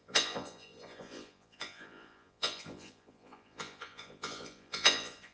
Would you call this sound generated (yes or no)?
yes